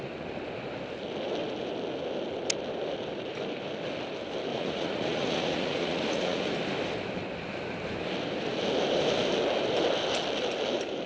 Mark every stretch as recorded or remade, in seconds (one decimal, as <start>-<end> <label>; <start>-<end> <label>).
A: 0.0-4.5 recorded; 4.5-6.5 remade; 6.5-11.1 recorded